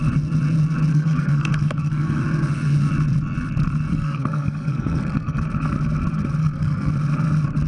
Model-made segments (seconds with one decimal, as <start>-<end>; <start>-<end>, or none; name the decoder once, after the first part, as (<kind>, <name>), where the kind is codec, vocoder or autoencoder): 0.9-2.2 (codec, SNAC); 3.9-5.4; 6.4-6.9